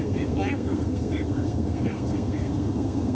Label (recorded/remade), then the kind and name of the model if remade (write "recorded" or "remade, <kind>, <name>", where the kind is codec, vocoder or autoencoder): remade, codec, SNAC